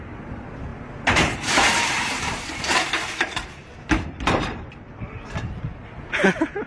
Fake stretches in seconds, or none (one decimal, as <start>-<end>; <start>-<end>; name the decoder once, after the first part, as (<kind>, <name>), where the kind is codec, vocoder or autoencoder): 0.7-4.7 (vocoder, BigVGAN v2)

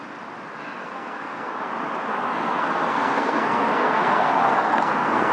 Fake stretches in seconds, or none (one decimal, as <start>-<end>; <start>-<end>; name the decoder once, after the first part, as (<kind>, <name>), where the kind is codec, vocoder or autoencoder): 0.8-1.7 (codec, SNAC); 2.1-5.3

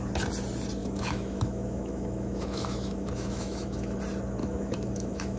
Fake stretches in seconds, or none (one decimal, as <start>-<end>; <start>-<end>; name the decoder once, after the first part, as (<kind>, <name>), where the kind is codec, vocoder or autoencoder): 0.8-4.0 (autoencoder, DAC-VAE); 4.4-5.4

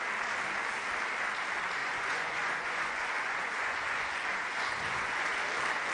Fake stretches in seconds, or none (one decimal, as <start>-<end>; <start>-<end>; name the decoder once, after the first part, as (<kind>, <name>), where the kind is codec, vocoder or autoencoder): 1.8-5.3 (vocoder, Vocos)

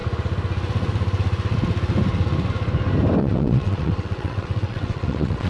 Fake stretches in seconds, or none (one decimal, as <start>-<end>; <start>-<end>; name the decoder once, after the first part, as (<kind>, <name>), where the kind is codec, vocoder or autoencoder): 3.2-5.5 (vocoder, WaveNeXt)

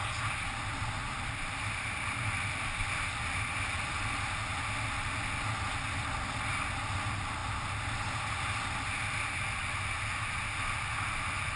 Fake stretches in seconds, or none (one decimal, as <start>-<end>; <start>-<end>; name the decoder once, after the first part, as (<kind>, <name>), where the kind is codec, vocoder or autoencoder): 1.0-4.4 (vocoder, BigVGAN v2)

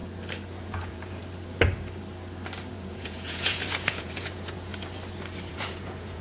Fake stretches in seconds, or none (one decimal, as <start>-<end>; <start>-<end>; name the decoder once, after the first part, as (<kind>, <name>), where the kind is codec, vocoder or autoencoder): 0.6-1.2 (vocoder, Vocos); 2.7-4.7; 5.5-6.2

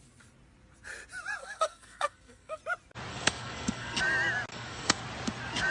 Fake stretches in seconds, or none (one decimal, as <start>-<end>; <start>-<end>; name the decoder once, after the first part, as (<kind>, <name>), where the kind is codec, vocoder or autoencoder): 1.4-2.6 (codec, SNAC); 3.1-4.0; 4.5-5.0